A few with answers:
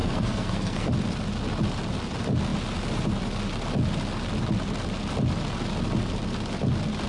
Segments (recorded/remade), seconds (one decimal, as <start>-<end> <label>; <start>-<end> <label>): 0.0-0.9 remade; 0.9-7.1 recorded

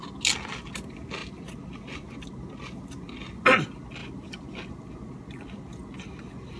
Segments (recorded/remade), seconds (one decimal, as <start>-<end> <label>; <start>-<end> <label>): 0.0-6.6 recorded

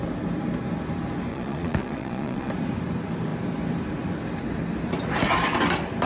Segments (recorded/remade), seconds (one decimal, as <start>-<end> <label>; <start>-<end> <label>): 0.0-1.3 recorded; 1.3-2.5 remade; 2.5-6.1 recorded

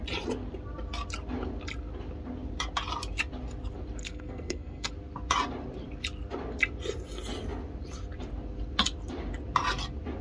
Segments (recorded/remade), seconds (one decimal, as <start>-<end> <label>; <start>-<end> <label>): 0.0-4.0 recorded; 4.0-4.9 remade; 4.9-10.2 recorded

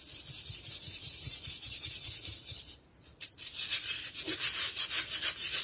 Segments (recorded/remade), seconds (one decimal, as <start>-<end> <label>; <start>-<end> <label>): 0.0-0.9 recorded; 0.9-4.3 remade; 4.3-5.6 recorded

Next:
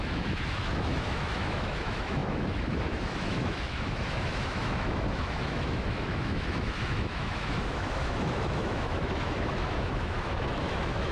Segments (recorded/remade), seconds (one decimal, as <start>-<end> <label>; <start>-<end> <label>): 0.0-11.1 remade

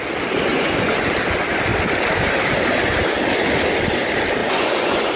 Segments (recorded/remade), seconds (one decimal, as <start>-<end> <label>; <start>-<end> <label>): 0.0-0.5 recorded; 0.5-1.1 remade; 1.1-4.4 recorded; 4.4-5.2 remade